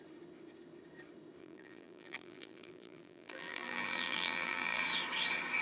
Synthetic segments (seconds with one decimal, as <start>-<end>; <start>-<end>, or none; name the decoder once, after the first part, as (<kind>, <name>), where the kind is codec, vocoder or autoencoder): 1.4-4.8 (vocoder, BigVGAN v2)